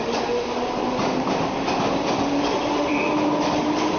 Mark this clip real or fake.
real